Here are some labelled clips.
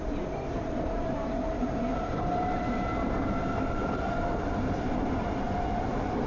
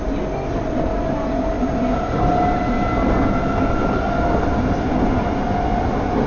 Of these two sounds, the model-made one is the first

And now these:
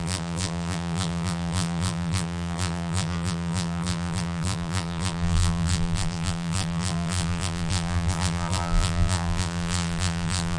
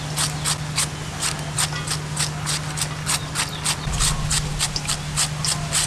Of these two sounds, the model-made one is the first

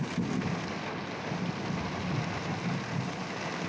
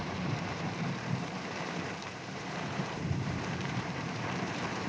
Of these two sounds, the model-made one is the second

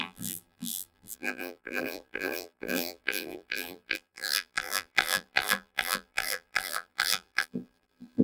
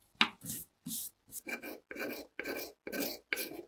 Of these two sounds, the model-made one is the first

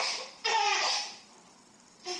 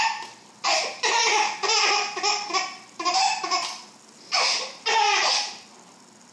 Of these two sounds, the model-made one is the first